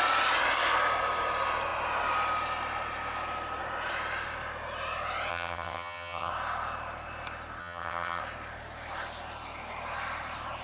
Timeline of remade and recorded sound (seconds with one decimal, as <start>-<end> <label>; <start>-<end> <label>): 0.0-5.3 recorded; 5.3-6.3 remade; 6.3-7.6 recorded; 7.6-8.2 remade; 8.2-10.6 recorded